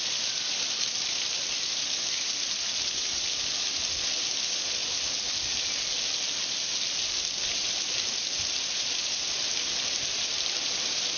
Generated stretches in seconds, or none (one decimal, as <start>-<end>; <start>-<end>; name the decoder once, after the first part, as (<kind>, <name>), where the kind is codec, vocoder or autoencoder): 0.0-4.8 (vocoder, BigVGAN v2); 7.1-11.2